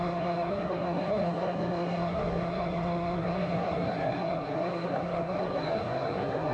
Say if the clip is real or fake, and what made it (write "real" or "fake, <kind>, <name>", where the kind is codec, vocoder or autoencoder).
fake, codec, SNAC